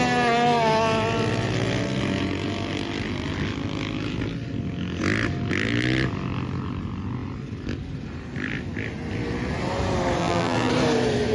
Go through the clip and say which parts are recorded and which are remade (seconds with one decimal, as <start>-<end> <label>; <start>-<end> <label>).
0.0-10.2 recorded; 10.2-10.7 remade; 10.7-11.3 recorded